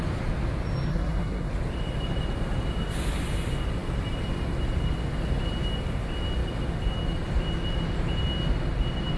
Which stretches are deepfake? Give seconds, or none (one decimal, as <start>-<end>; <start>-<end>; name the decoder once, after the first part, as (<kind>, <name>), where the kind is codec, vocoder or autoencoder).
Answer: 0.9-1.5 (codec, SNAC)